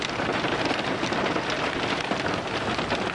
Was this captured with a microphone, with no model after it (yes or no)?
no